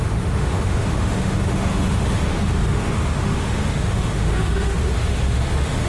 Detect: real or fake fake